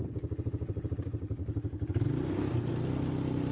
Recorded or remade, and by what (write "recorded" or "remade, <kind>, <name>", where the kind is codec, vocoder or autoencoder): recorded